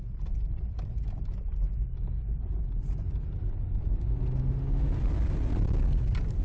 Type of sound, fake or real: real